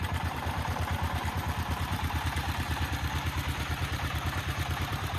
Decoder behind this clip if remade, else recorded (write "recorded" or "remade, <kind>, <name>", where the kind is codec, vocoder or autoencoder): remade, vocoder, BigVGAN v2